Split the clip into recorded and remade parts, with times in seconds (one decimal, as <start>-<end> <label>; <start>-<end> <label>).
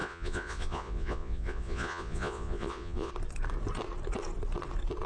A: 0.0-3.1 remade; 3.1-5.1 recorded